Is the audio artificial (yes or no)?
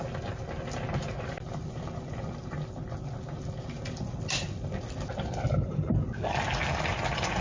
no